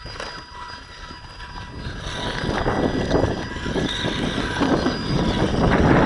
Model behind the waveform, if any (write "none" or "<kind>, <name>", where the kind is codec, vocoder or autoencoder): none